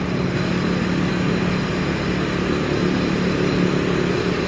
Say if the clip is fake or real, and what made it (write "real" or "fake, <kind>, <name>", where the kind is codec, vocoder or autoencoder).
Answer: real